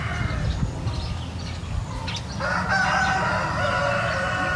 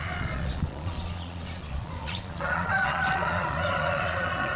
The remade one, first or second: second